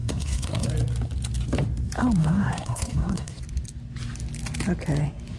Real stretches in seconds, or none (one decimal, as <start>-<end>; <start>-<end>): 0.7-2.2; 3.4-5.4